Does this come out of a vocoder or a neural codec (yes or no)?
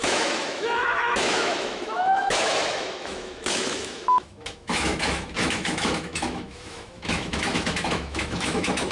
yes